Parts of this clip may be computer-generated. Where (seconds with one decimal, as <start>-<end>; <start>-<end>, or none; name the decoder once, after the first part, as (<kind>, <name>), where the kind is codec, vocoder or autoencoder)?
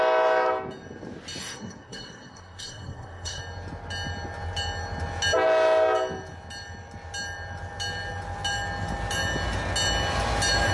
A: 1.4-3.4 (codec, SNAC)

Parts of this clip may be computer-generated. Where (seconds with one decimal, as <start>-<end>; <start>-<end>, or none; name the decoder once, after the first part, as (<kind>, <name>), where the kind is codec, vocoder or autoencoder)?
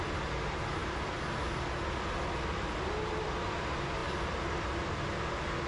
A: none